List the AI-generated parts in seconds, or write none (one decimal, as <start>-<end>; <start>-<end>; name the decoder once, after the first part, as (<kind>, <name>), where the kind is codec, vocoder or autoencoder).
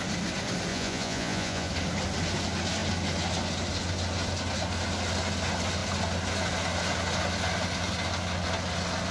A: 0.7-1.7 (vocoder, Vocos)